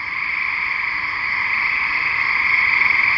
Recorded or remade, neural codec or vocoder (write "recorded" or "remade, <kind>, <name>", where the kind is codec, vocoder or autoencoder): recorded